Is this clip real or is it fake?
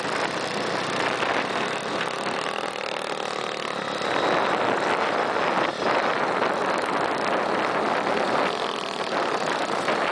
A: real